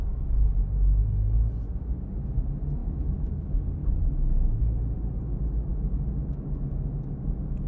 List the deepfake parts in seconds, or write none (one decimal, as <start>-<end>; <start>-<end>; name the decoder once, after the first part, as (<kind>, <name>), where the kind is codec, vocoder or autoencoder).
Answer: 2.8-3.3 (autoencoder, DAC-VAE); 3.8-4.6